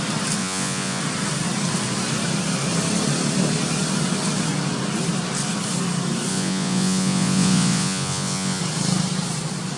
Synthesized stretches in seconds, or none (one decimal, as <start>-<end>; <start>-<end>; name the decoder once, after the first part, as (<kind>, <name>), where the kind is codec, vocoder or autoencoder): 0.4-1.0 (vocoder, Vocos); 6.3-8.6